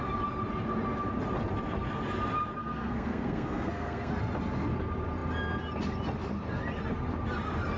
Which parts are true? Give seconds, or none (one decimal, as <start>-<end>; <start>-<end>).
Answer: 0.0-2.6; 4.1-7.8